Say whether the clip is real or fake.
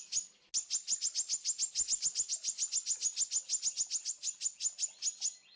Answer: real